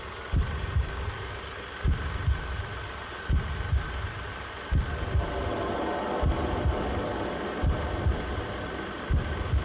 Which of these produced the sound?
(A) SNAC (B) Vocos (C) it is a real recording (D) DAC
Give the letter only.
C